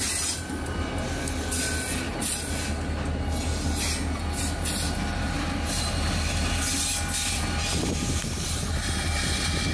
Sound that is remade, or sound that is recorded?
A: recorded